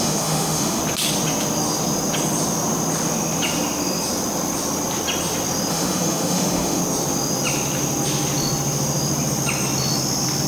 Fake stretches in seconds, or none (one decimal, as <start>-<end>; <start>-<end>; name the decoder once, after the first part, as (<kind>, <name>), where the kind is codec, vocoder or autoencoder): 0.0-0.8 (autoencoder, DAC-VAE); 5.7-6.8